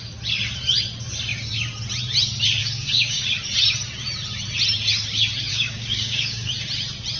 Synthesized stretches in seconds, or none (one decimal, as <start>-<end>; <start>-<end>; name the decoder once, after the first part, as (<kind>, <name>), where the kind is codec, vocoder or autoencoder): 2.6-3.2 (codec, DAC); 5.5-6.5